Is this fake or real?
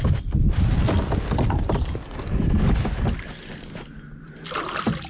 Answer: real